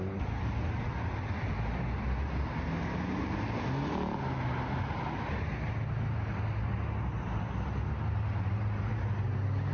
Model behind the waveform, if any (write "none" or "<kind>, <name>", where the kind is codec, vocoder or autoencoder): none